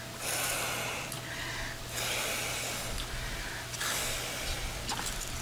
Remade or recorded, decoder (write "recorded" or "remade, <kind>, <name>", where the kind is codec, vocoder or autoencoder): recorded